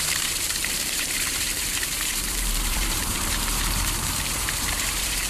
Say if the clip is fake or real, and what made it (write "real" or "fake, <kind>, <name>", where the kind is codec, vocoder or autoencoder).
fake, vocoder, BigVGAN v2